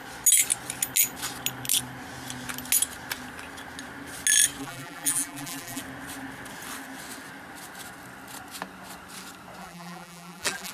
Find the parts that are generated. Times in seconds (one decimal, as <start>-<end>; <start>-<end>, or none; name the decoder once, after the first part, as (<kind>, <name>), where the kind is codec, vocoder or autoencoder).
4.6-5.8 (vocoder, BigVGAN v2); 9.6-10.7